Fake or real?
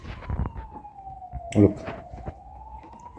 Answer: real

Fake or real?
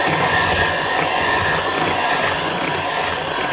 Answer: fake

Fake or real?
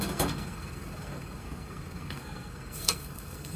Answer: fake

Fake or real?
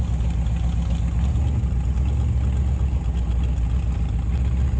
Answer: real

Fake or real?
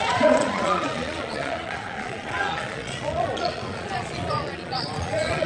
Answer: fake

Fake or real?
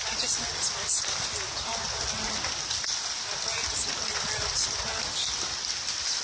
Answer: real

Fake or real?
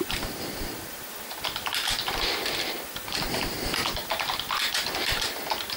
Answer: fake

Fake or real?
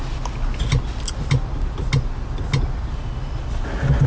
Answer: real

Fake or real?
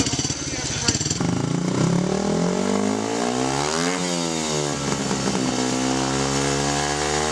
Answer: real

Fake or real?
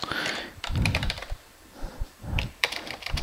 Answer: fake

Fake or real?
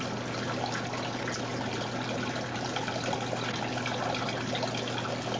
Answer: real